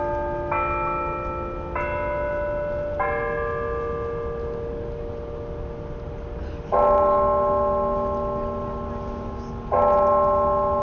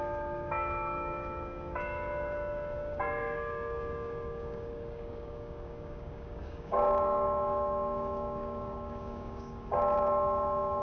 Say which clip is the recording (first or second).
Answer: first